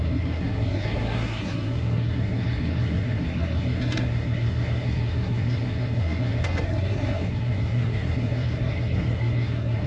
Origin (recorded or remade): remade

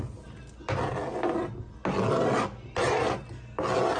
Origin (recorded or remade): recorded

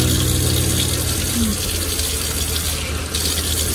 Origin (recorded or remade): recorded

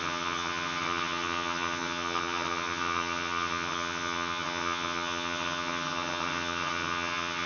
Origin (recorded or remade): remade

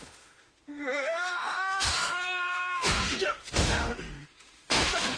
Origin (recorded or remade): remade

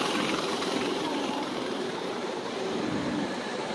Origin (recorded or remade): remade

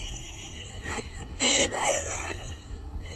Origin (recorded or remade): remade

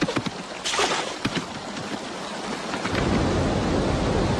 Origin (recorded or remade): recorded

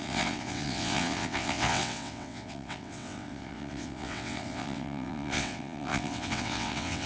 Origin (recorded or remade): remade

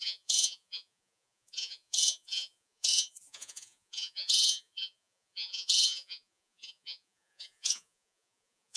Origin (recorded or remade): remade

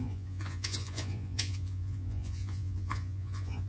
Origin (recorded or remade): remade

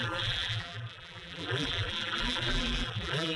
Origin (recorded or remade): remade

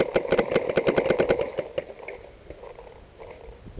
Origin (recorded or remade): recorded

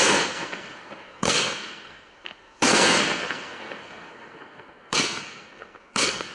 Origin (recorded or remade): remade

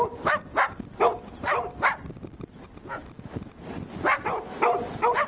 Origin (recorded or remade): recorded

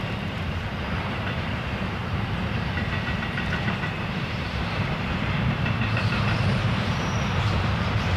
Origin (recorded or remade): remade